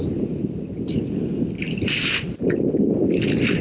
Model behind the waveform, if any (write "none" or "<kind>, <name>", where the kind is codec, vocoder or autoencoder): none